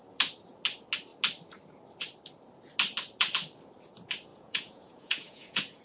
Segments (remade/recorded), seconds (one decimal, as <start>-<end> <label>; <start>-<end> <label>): 0.0-4.3 recorded; 4.3-5.8 remade